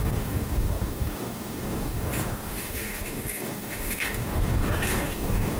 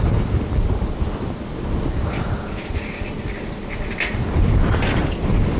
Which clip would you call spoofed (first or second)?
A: first